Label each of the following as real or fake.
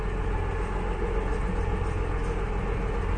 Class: real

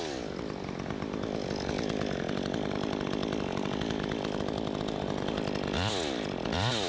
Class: real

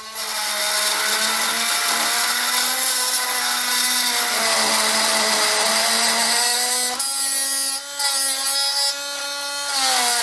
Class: real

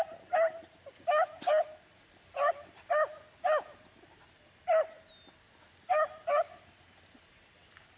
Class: real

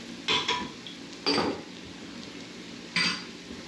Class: real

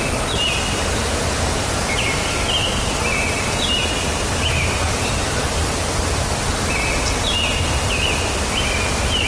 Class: real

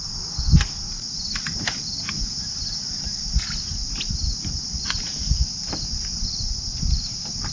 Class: real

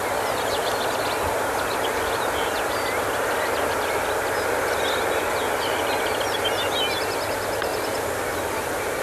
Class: real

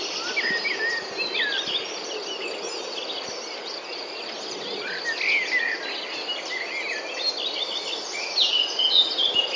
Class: real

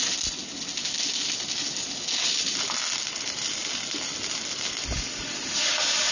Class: real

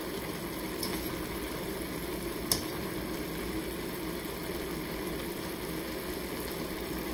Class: real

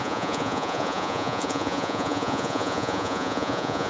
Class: fake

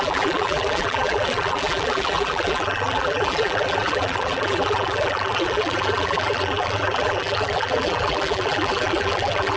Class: fake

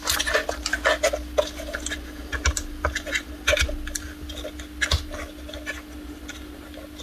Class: real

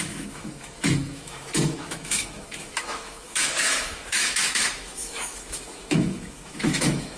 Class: fake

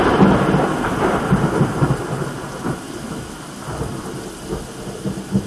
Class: real